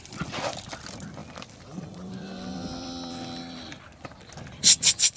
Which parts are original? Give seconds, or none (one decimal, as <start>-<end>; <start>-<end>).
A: 0.0-1.2; 3.7-5.2